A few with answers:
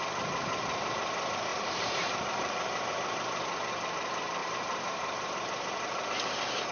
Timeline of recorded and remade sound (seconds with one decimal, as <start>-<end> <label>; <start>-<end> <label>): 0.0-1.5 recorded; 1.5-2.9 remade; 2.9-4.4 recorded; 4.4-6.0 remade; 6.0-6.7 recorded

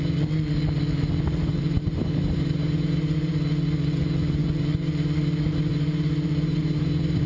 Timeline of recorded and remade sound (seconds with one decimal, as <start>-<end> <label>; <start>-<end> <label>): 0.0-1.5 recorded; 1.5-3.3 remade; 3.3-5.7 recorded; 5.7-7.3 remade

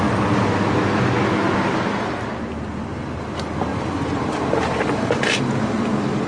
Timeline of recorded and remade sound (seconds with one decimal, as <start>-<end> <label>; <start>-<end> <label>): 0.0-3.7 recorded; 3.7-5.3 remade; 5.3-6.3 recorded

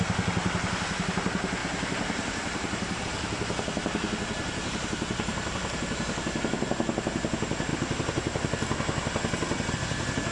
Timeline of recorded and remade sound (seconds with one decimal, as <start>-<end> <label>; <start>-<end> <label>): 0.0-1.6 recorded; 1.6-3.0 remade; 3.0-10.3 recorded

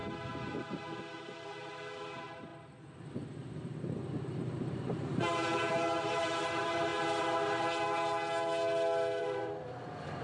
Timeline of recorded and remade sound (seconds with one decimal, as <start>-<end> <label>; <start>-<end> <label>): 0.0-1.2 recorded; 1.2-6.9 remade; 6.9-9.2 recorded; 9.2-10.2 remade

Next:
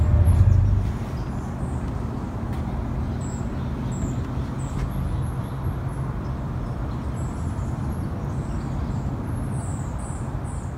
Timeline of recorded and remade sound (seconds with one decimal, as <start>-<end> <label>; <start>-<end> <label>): 0.0-10.8 recorded